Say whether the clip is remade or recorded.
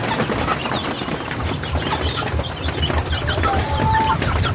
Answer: recorded